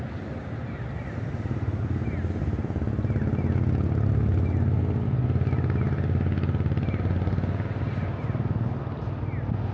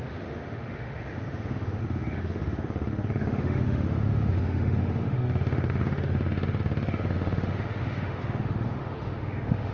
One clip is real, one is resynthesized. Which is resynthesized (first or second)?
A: second